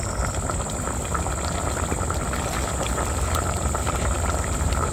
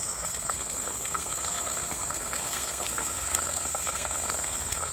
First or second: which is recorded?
first